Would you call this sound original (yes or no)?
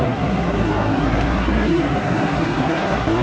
no